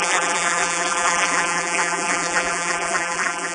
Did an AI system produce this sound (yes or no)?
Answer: yes